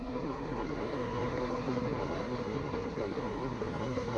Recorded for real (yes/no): no